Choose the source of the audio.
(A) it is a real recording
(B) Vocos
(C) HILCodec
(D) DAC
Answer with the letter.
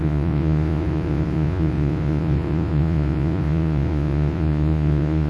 B